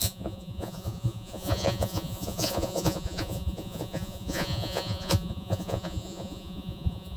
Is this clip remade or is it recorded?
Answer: remade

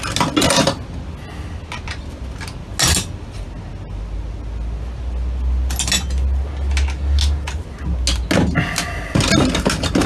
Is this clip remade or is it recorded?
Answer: recorded